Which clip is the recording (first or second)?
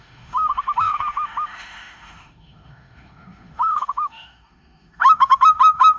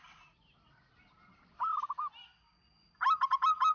second